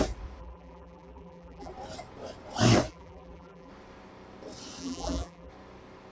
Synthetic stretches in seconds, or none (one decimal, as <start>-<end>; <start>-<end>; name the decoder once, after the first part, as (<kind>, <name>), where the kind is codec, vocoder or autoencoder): 0.4-1.7 (vocoder, BigVGAN v2); 2.9-3.7; 4.8-5.5